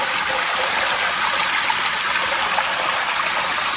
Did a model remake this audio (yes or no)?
no